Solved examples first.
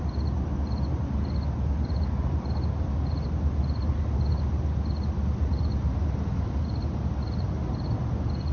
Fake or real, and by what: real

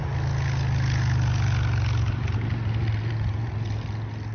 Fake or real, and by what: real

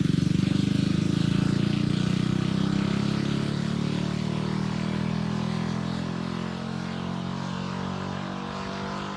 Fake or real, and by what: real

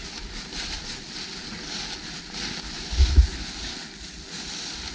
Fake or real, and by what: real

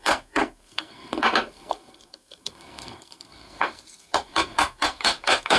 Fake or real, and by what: fake, codec, SNAC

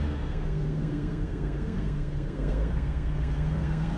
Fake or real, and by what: fake, codec, SNAC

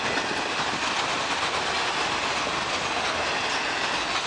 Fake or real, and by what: real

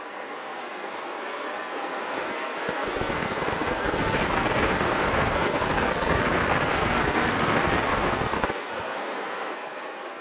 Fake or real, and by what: fake, codec, SNAC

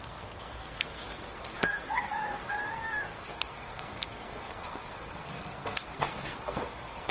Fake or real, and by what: fake, codec, SNAC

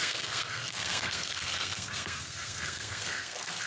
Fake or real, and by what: fake, codec, SNAC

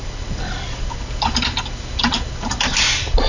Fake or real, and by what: real